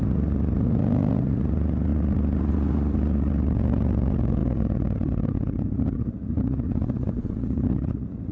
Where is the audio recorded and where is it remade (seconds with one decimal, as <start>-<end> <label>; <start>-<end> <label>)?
0.0-8.3 remade

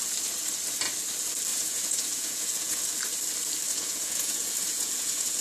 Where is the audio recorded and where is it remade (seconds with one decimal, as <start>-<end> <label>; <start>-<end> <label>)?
0.0-1.5 recorded; 1.5-2.8 remade; 2.8-3.7 recorded; 3.7-5.4 remade

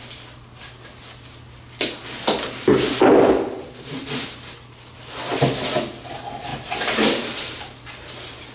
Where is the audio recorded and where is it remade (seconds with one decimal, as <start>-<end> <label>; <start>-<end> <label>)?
0.0-8.5 recorded

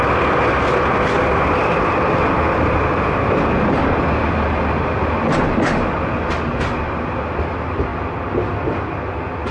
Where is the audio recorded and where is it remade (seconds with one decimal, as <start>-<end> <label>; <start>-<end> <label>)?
0.0-9.5 recorded

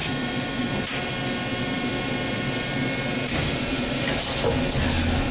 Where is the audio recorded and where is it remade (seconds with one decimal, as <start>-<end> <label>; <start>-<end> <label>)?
0.0-3.4 recorded; 3.4-4.3 remade; 4.3-5.3 recorded

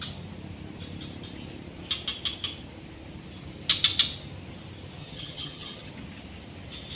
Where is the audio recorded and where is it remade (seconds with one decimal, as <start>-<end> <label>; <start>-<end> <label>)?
0.0-5.0 recorded; 5.0-5.9 remade; 5.9-7.0 recorded